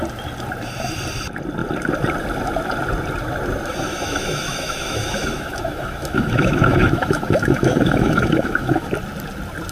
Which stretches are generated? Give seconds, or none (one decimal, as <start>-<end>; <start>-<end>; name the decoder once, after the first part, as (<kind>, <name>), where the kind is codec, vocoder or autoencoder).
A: 3.9-8.9 (autoencoder, DAC-VAE)